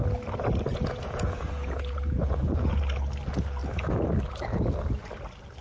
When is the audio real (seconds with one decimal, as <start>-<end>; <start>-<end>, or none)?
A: 0.0-0.7; 2.8-5.6